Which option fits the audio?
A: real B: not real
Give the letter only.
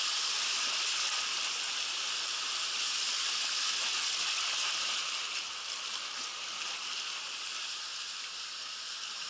A